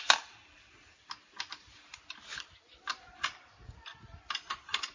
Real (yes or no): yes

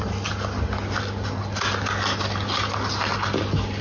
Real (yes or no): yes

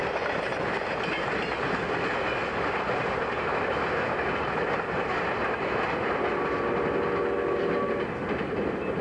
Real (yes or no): yes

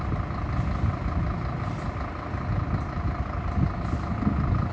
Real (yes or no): yes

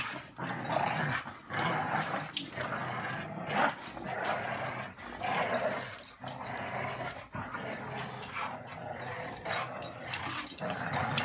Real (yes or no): yes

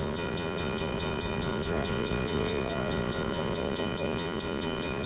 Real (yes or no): no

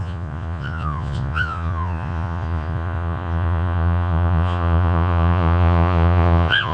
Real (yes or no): no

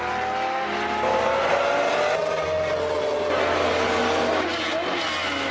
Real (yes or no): yes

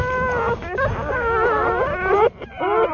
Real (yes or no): yes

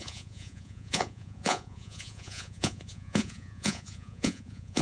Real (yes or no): no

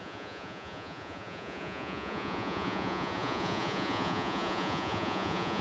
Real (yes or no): no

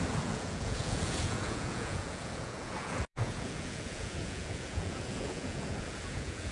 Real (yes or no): no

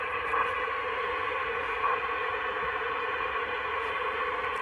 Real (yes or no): yes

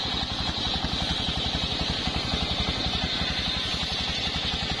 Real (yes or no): yes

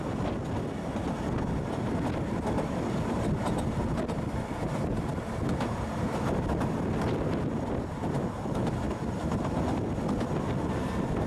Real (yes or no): yes